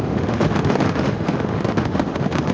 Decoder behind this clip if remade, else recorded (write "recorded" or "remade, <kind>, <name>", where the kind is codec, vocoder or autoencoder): remade, autoencoder, DAC-VAE